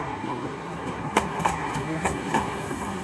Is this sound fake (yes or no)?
yes